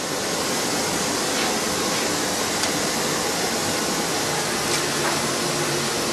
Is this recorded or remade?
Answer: recorded